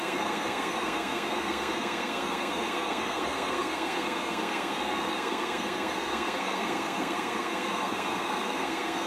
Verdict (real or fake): fake